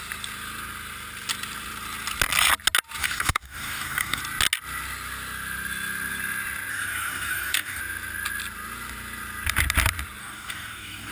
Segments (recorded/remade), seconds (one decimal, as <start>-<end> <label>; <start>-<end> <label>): 0.0-3.0 recorded; 3.0-4.2 remade; 4.2-6.7 recorded; 6.7-7.8 remade; 7.8-10.2 recorded; 10.2-11.1 remade